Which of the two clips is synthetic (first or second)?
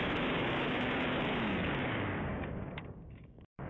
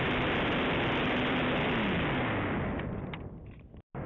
first